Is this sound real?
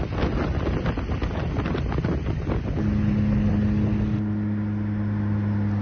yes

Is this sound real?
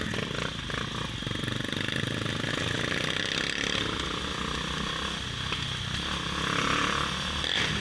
yes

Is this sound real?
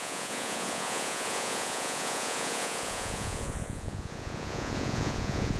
no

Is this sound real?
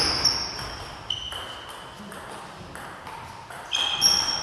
yes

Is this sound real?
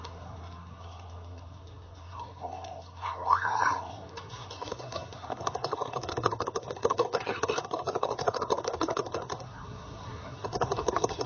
no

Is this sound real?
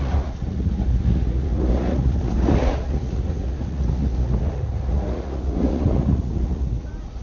no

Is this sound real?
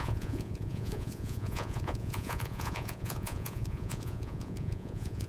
no